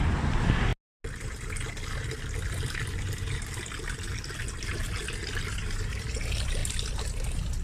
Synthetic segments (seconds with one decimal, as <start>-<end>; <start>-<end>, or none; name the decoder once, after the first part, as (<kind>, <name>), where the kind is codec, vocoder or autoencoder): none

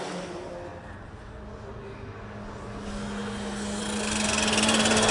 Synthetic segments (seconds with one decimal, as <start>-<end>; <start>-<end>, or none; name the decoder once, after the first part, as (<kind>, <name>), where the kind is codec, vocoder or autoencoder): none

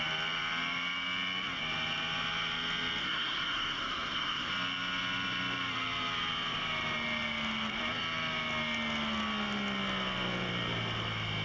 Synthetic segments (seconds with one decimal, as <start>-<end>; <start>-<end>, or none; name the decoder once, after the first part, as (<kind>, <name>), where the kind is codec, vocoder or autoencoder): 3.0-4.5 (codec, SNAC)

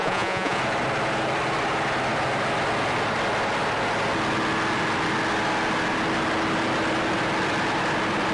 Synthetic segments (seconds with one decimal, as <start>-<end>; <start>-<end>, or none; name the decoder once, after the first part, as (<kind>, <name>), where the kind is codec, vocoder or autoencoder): 0.0-0.6 (vocoder, Vocos)